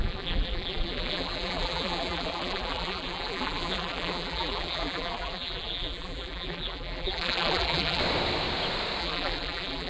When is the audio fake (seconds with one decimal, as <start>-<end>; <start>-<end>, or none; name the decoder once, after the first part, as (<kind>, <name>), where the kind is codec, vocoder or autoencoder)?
0.0-8.0 (vocoder, BigVGAN v2); 9.0-9.9